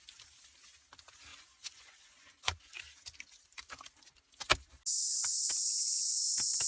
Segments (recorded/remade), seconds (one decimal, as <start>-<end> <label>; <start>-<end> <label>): 0.0-1.3 recorded; 1.3-2.7 remade; 2.7-6.7 recorded

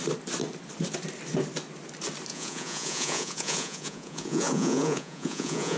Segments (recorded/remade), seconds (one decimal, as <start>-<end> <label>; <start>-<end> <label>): 0.0-2.3 recorded; 2.3-5.8 remade

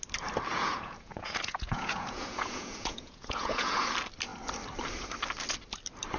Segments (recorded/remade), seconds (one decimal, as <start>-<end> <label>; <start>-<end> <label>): 0.0-0.5 recorded; 0.5-3.8 remade; 3.8-6.2 recorded

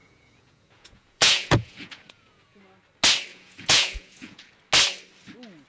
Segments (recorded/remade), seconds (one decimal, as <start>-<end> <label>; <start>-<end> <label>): 0.0-2.6 remade; 2.6-3.3 recorded; 3.3-4.5 remade; 4.5-5.7 recorded